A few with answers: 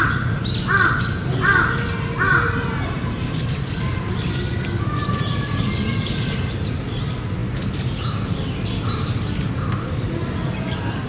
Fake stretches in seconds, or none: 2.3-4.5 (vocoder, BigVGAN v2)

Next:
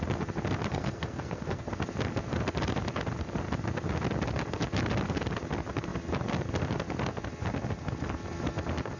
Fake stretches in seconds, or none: 0.7-1.7 (codec, SNAC)

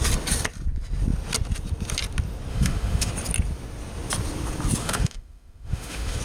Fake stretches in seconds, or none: 2.5-3.1 (autoencoder, DAC-VAE); 4.8-6.2

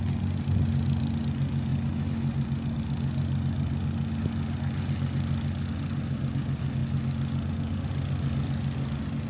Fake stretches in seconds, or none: none

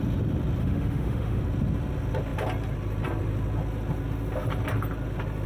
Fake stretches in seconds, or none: 0.6-1.4 (autoencoder, DAC-VAE)